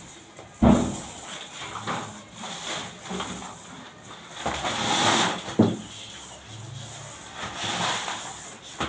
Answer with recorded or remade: recorded